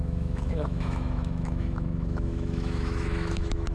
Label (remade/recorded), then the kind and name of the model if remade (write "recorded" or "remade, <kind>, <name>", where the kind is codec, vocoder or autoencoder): remade, autoencoder, DAC-VAE